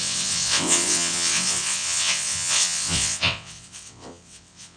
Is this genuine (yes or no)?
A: no